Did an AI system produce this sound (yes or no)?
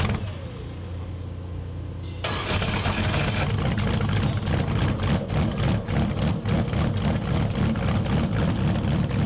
no